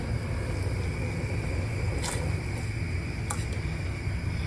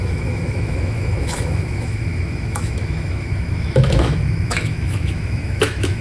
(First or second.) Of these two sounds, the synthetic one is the second